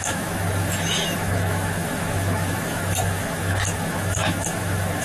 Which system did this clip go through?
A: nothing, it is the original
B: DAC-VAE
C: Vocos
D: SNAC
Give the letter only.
B